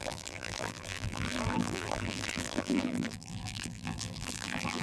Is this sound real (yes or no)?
no